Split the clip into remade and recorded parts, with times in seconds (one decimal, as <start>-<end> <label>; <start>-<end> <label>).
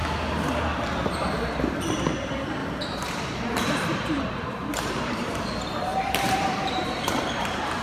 0.0-2.6 recorded; 2.6-5.4 remade; 5.4-5.9 recorded; 5.9-6.9 remade; 6.9-7.8 recorded